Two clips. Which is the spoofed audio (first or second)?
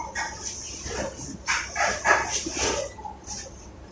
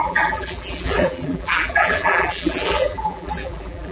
second